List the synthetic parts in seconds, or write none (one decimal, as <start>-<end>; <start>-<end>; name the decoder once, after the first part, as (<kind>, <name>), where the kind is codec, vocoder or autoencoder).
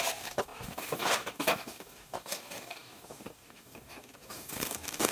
0.0-5.1 (codec, DAC)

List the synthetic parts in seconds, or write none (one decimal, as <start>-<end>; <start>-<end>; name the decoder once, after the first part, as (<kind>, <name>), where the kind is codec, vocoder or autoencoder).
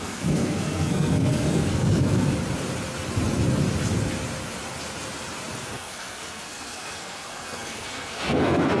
0.0-2.3 (codec, SNAC); 5.7-8.8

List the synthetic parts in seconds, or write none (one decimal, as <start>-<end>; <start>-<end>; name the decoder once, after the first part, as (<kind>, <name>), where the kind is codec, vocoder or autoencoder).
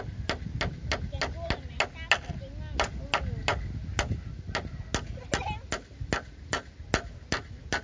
none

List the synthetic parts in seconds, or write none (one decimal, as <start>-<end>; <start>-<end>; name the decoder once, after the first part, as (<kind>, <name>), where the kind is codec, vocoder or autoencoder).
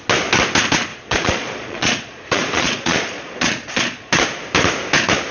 0.9-4.1 (vocoder, Vocos)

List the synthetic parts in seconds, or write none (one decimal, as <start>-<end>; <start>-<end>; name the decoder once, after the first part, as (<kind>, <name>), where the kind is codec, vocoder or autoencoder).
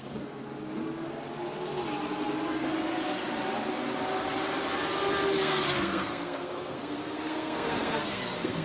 0.0-0.4 (codec, SNAC); 5.4-8.6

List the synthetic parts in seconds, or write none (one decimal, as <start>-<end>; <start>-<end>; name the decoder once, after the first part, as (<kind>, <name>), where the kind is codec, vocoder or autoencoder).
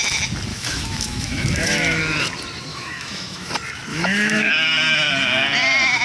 0.5-2.0 (autoencoder, DAC-VAE); 2.7-3.5; 3.9-4.5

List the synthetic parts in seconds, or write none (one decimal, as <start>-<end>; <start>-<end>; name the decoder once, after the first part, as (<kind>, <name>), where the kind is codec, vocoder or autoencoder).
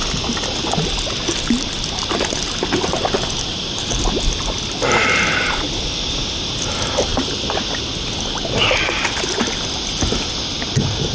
none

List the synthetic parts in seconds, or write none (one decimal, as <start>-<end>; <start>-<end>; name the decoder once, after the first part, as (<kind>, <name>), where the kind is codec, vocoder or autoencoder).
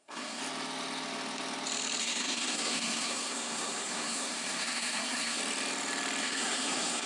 0.0-0.4 (codec, SNAC); 2.0-5.4; 6.2-7.1